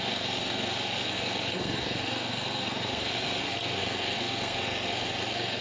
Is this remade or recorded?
remade